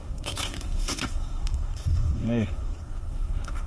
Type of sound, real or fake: fake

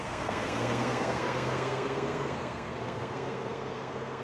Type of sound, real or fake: fake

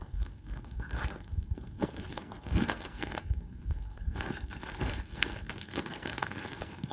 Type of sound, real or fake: fake